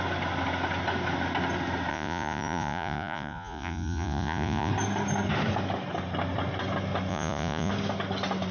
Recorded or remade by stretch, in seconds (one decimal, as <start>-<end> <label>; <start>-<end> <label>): 0.0-1.9 recorded; 1.9-4.7 remade; 4.7-7.1 recorded; 7.1-7.7 remade; 7.7-8.5 recorded